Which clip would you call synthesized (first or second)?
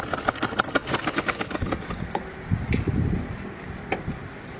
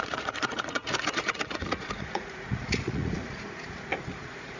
second